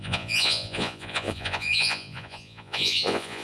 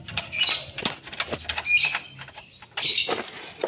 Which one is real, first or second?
second